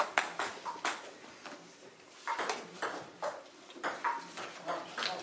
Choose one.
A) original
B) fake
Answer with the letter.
A